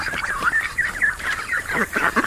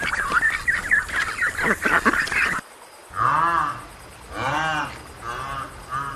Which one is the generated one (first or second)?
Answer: first